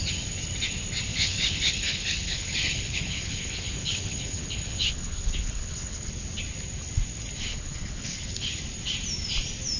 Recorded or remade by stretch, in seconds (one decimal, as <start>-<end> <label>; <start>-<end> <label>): 0.0-1.1 recorded; 1.1-6.1 remade; 6.1-7.5 recorded; 7.5-8.6 remade; 8.6-9.8 recorded